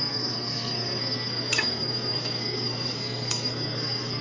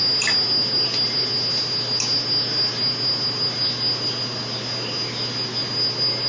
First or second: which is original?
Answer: second